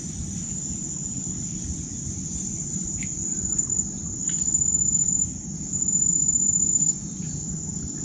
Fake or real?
real